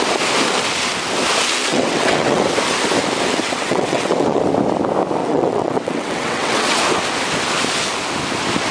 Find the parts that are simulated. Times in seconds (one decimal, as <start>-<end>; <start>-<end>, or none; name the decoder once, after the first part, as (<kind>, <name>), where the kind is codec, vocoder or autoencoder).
1.7-2.5 (vocoder, WaveNeXt); 3.4-4.4; 5.2-6.8